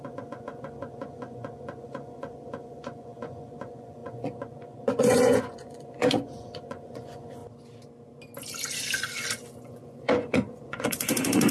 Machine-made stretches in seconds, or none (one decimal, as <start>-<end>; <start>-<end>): 0.0-7.4; 9.6-11.5